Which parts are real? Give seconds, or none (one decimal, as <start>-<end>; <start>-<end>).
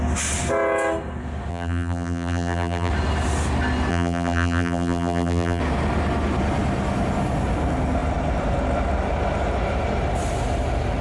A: 0.0-1.5; 2.9-3.9; 5.6-11.0